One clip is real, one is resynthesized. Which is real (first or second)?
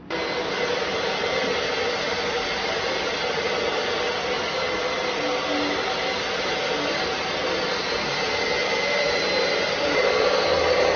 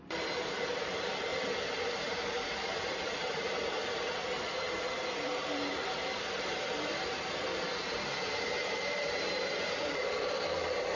first